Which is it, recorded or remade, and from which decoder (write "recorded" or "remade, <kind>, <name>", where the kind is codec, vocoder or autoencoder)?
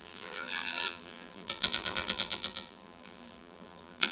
remade, vocoder, BigVGAN v2